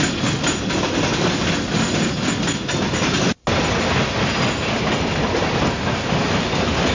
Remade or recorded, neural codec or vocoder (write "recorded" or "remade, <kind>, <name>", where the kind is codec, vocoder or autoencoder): recorded